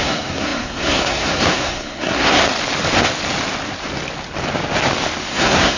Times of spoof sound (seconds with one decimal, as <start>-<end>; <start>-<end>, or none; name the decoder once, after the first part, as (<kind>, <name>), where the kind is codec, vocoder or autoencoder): 0.0-2.4 (codec, SNAC); 5.3-5.8